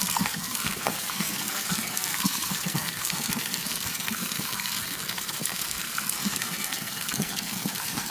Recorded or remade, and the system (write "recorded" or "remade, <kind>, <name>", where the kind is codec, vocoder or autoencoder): remade, codec, SNAC